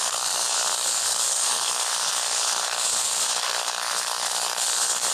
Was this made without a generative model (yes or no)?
no